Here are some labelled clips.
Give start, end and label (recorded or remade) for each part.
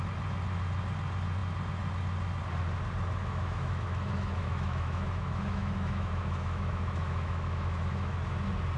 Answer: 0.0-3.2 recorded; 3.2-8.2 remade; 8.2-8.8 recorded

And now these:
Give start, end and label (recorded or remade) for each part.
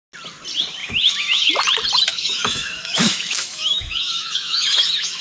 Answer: 0.0-0.8 recorded; 0.8-1.5 remade; 1.5-2.1 recorded; 2.1-5.2 remade